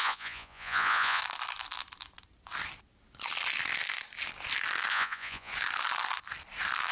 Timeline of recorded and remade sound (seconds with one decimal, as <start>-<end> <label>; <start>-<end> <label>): 0.0-1.2 remade; 1.2-4.9 recorded; 4.9-5.5 remade; 5.5-6.9 recorded